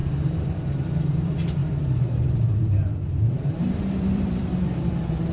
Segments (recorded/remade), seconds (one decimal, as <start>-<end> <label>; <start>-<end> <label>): 0.0-5.3 remade